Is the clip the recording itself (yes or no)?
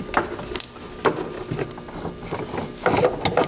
yes